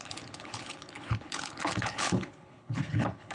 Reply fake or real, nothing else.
fake